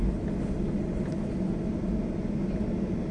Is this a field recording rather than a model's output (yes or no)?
yes